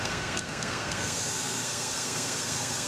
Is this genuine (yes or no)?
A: no